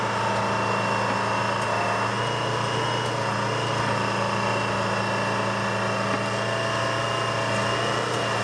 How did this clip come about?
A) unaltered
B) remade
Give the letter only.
A